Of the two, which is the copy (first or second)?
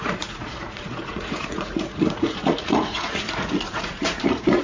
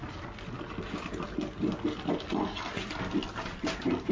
first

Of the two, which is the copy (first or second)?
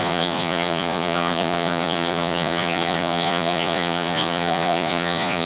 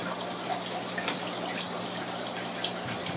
first